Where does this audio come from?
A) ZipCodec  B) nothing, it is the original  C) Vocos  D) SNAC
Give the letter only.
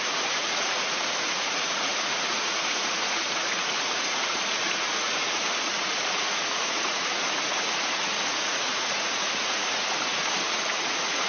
C